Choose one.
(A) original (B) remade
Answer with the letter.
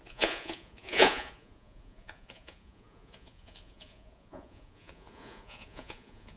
B